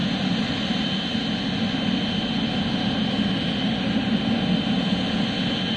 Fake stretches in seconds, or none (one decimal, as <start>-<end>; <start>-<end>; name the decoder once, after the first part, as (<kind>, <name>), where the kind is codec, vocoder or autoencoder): none